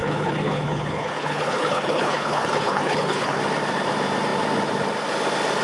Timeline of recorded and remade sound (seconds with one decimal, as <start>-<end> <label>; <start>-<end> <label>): 0.0-3.4 remade; 3.4-5.6 recorded